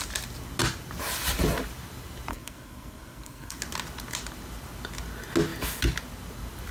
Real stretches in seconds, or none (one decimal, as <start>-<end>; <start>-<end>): 0.0-2.3; 3.6-6.7